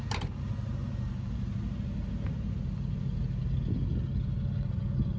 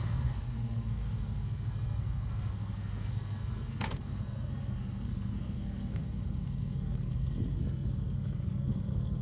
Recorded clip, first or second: first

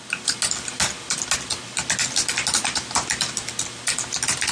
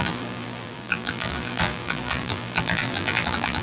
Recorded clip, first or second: first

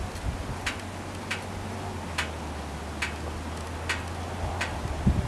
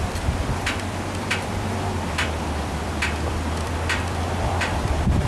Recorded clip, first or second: first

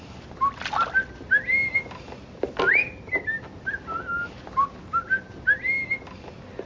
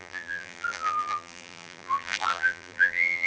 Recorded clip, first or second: first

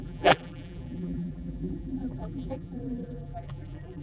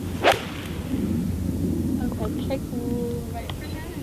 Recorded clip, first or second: second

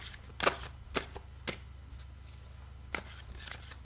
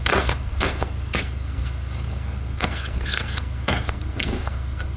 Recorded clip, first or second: first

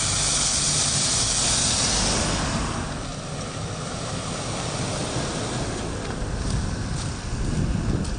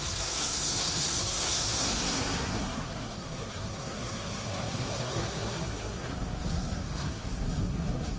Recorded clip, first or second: first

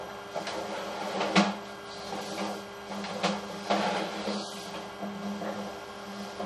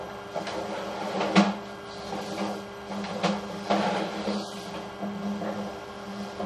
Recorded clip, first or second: first